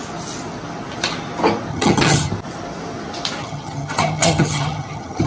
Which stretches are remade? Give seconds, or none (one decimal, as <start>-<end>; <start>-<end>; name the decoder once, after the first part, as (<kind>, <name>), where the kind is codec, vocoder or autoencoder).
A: 1.7-2.3 (vocoder, HiFi-GAN); 3.4-5.3